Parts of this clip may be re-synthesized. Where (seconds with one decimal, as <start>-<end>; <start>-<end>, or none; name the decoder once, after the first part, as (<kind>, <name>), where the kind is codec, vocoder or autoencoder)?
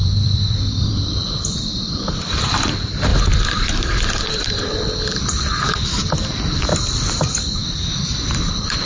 0.0-5.5 (vocoder, BigVGAN v2); 6.9-8.9